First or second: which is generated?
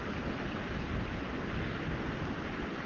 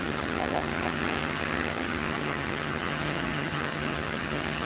second